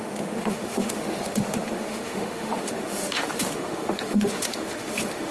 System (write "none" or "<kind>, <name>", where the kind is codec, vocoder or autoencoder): autoencoder, DAC-VAE